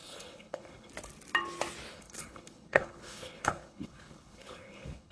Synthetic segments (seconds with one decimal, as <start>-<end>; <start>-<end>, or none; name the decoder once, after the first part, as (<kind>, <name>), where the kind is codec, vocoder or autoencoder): 0.0-0.9 (codec, HILCodec); 1.9-5.1